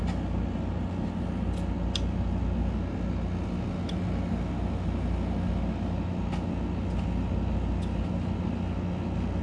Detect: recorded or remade recorded